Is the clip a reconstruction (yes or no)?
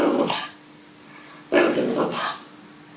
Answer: no